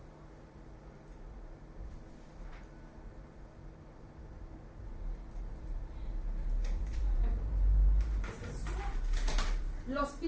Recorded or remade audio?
remade